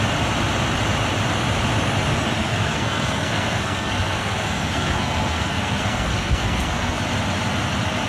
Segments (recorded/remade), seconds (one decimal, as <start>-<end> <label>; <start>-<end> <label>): 0.0-2.4 recorded; 2.4-7.0 remade; 7.0-8.1 recorded